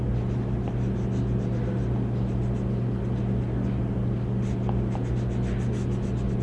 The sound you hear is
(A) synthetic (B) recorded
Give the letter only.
B